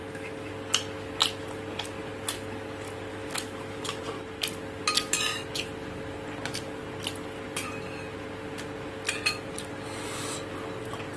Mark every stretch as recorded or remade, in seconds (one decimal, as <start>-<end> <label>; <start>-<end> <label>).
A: 0.0-0.5 remade; 0.5-3.1 recorded; 3.1-4.0 remade; 4.0-11.2 recorded